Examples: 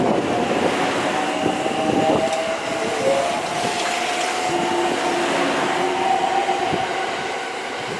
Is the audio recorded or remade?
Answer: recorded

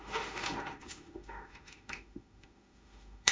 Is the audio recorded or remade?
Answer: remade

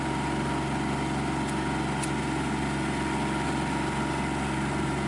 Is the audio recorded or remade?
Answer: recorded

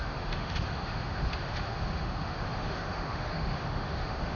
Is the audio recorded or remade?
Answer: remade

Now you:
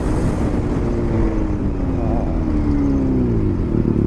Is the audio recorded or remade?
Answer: recorded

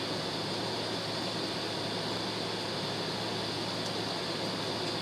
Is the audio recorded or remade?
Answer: recorded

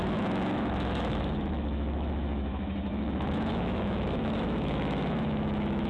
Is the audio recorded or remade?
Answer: remade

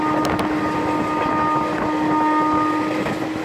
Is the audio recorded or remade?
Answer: recorded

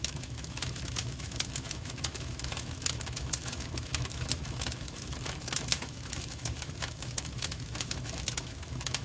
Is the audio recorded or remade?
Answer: remade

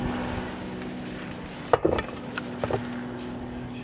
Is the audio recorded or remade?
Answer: recorded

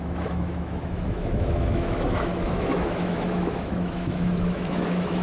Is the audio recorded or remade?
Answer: remade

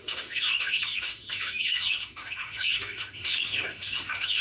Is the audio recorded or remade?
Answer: remade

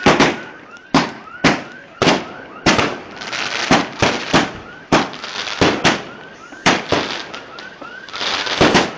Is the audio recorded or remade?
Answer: recorded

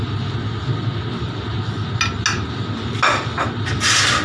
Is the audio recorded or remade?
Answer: recorded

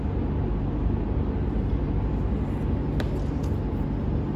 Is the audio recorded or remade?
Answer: recorded